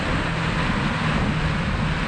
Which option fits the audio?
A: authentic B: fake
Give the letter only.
A